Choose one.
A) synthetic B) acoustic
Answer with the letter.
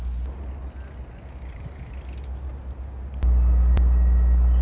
B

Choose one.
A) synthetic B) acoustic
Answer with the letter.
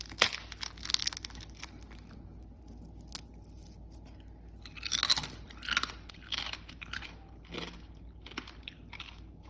B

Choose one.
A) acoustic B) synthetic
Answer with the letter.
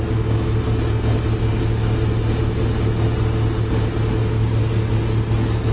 A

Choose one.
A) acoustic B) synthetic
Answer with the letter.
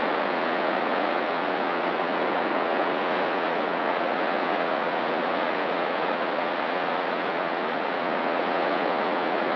B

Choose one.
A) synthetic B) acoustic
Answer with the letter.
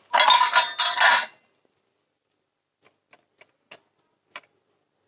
B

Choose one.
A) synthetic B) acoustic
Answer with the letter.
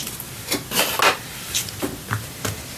B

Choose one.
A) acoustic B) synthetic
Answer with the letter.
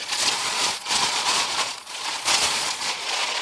B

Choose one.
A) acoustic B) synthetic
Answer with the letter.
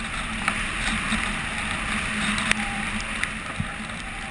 A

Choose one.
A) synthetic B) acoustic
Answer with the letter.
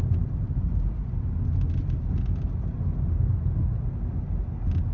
B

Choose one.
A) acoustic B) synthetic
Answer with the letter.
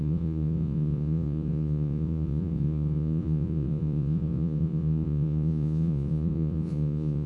B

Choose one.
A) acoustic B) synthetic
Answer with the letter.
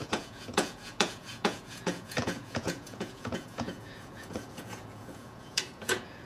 B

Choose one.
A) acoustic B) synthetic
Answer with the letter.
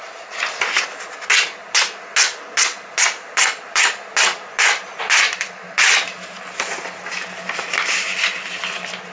A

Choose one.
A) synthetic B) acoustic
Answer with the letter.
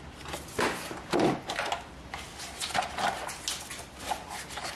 B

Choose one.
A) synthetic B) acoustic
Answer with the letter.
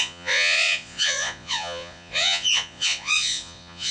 A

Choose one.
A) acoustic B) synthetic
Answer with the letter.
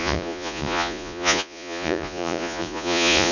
B